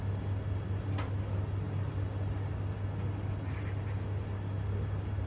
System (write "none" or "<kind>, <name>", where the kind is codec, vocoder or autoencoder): none